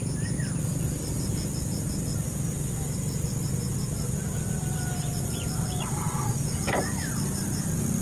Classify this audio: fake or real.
real